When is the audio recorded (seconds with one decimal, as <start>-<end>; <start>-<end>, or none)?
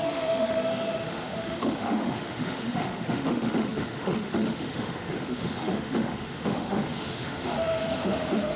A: none